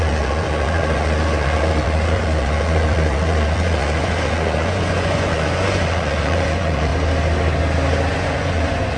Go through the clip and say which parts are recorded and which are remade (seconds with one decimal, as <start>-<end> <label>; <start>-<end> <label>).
0.0-6.9 remade; 6.9-8.1 recorded; 8.1-9.0 remade